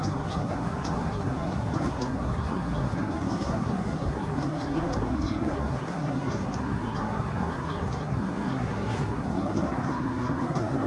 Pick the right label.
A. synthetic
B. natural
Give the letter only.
A